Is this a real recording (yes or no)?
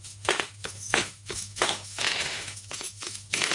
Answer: no